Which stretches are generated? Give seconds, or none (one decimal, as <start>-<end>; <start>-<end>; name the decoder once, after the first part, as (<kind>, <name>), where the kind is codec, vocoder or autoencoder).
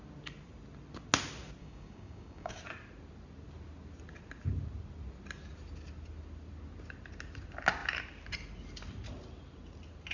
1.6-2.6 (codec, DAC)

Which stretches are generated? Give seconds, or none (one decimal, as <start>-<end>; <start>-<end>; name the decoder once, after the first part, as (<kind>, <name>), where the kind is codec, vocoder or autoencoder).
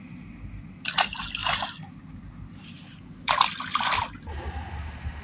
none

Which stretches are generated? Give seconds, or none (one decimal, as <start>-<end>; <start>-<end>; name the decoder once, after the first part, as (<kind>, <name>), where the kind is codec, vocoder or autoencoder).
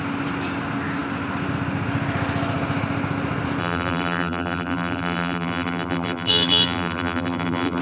3.6-7.8 (vocoder, BigVGAN v2)